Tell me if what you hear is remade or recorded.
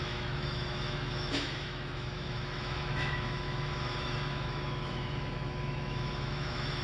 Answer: remade